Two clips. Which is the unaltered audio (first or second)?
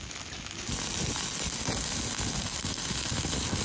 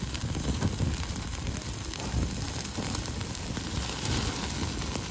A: first